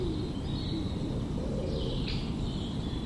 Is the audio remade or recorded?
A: recorded